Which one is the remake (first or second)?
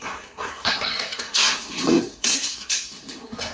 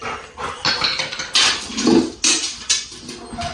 first